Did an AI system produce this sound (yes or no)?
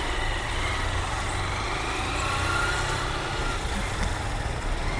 no